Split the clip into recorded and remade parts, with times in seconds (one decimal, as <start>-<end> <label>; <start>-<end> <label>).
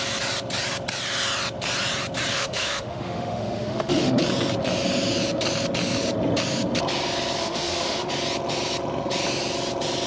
0.0-2.3 recorded; 2.3-4.2 remade; 4.2-7.4 recorded; 7.4-8.1 remade; 8.1-10.1 recorded